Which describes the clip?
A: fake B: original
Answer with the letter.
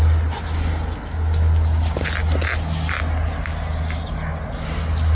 B